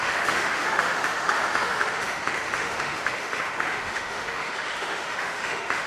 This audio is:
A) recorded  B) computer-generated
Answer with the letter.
B